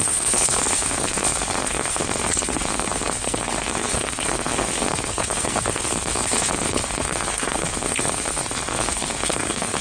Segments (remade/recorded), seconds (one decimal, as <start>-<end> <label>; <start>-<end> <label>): 0.0-9.8 remade